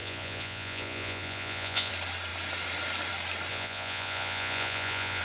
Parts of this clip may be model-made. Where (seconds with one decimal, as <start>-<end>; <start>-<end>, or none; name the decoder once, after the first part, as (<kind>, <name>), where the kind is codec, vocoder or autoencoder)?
0.0-1.9 (vocoder, Vocos); 3.5-5.2